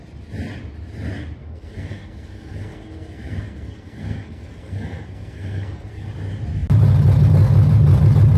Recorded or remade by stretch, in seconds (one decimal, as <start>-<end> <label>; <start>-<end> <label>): 0.0-1.4 recorded; 1.4-6.1 remade; 6.1-8.4 recorded